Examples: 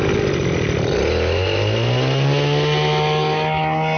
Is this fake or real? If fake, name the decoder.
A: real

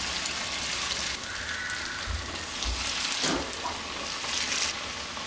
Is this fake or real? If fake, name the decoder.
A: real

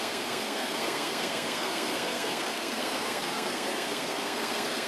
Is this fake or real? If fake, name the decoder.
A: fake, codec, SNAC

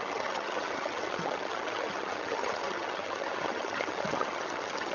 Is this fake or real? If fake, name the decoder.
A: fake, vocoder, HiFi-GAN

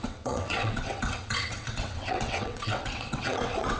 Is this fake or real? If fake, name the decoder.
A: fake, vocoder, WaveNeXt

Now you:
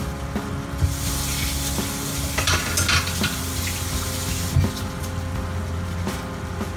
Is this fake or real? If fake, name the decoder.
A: real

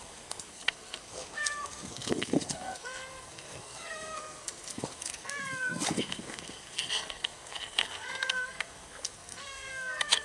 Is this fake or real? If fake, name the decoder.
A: fake, codec, SNAC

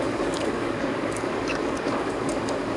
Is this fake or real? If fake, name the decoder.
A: fake, codec, DAC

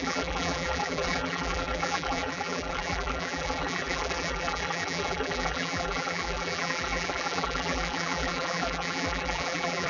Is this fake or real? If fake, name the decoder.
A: fake, vocoder, BigVGAN v2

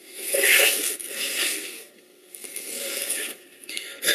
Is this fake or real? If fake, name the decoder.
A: fake, codec, SNAC